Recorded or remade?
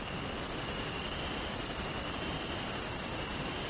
recorded